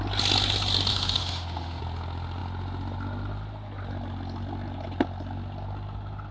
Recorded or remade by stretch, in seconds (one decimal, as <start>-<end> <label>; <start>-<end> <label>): 0.0-0.9 recorded; 0.9-1.8 remade; 1.8-6.3 recorded